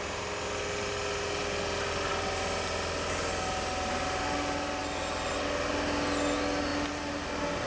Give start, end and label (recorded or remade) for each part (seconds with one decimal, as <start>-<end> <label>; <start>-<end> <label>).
0.0-7.7 recorded